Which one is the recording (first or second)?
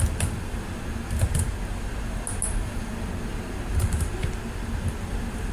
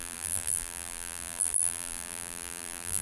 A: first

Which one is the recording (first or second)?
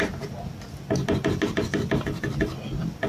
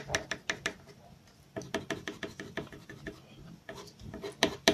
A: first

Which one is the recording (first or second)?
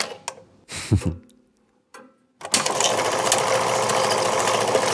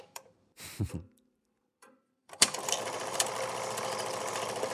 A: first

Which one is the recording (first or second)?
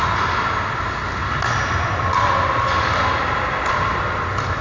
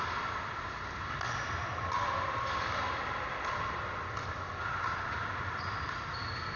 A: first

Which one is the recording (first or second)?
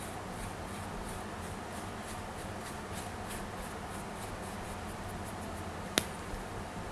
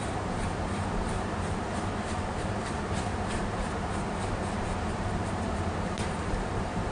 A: first